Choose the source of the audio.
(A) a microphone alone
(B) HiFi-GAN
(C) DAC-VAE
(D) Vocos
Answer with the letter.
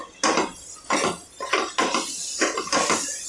A